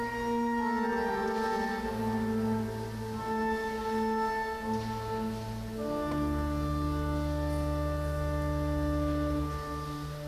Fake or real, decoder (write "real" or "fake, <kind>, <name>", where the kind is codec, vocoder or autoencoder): real